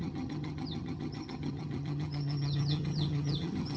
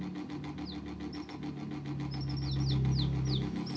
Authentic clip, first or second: second